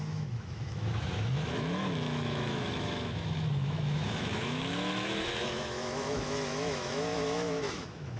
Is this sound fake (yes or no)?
yes